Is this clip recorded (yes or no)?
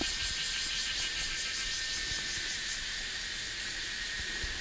yes